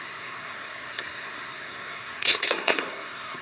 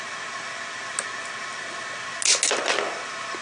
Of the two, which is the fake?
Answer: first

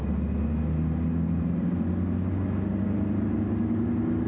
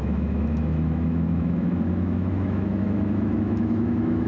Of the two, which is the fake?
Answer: second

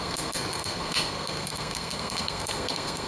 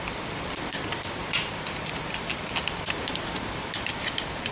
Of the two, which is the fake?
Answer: first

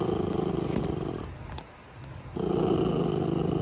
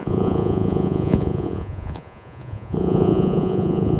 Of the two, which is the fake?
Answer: second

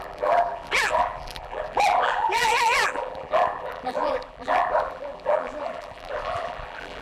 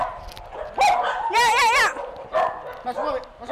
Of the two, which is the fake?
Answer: first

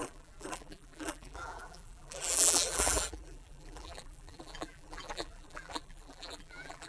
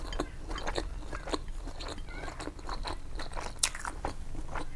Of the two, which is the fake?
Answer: first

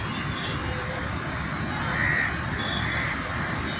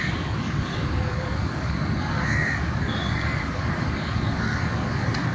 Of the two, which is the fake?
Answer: second